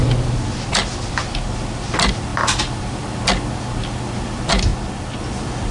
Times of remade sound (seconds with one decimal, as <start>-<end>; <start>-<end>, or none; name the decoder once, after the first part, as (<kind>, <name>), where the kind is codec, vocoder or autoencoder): none